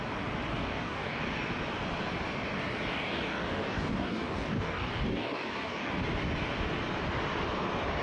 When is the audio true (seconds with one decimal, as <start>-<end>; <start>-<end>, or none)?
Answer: 0.0-0.5; 1.2-2.9; 5.9-8.0